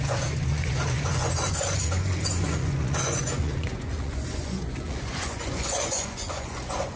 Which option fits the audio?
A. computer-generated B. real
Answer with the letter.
A